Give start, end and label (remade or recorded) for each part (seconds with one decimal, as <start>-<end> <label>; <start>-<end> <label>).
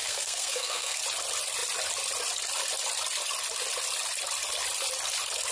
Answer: 0.0-1.0 remade; 1.0-5.5 recorded